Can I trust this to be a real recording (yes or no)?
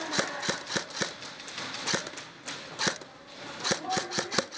yes